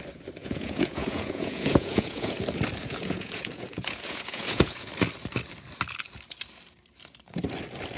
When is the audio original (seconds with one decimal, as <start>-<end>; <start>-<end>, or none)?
0.0-0.4; 2.4-2.8; 4.9-8.0